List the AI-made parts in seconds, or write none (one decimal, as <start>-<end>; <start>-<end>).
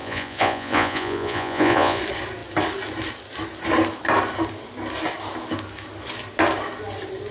0.0-2.0